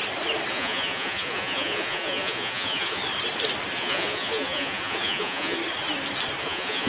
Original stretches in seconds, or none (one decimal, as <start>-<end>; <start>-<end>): 0.0-0.5; 3.0-3.7; 5.6-6.4